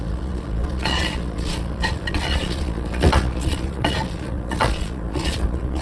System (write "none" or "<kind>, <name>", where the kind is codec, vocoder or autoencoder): vocoder, Vocos